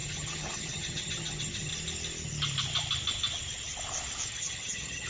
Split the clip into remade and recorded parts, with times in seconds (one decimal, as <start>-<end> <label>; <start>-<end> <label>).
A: 0.0-1.7 remade; 1.7-4.3 recorded; 4.3-5.1 remade